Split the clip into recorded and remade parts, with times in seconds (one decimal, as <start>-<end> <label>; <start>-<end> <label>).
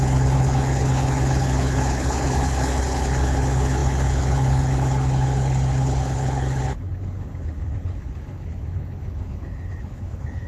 0.0-10.5 remade